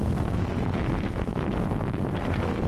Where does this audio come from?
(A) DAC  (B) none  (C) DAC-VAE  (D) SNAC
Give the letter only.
D